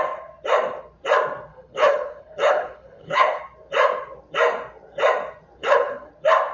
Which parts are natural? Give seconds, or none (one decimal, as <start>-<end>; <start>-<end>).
0.0-1.5; 3.4-5.6; 6.1-6.5